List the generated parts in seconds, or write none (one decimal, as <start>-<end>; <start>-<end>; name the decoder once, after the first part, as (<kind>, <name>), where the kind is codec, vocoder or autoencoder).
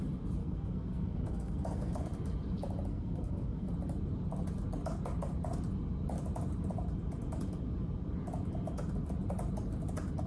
0.4-2.0 (codec, SNAC); 2.9-3.7